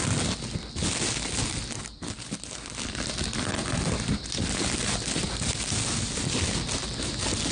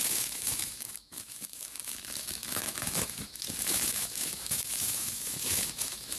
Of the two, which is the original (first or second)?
first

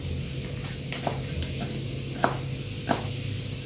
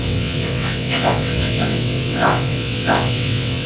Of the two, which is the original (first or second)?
first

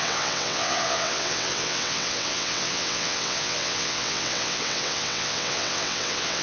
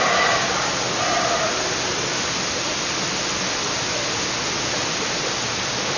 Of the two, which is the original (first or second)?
second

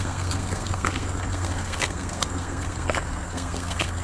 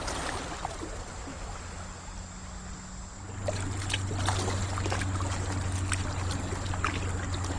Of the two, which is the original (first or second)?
second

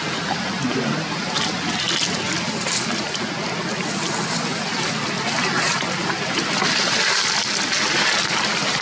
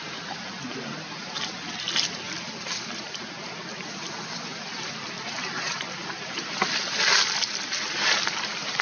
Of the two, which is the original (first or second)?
first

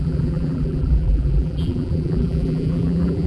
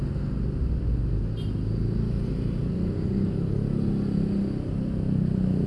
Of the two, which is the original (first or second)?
second